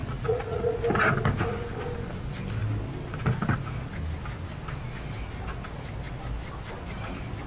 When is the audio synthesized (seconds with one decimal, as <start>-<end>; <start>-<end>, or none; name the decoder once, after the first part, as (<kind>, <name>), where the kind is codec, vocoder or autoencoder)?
0.0-0.8 (vocoder, Vocos)